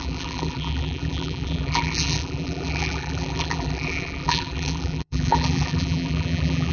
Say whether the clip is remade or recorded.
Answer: remade